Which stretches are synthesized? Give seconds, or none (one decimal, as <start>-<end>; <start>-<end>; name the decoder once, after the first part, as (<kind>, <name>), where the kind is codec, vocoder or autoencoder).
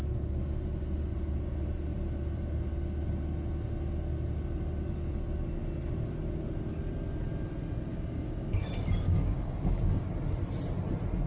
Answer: 7.9-10.1 (codec, DAC)